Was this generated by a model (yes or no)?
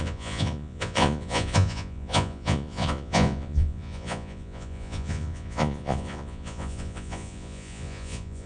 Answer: yes